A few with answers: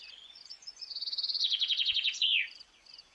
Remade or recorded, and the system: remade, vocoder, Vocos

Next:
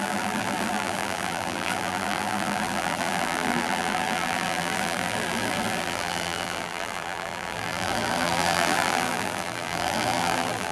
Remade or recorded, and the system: remade, vocoder, BigVGAN v2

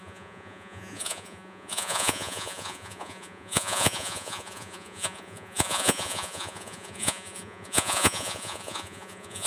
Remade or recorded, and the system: remade, vocoder, Vocos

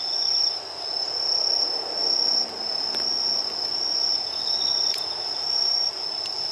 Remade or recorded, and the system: recorded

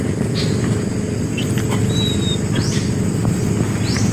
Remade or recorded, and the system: recorded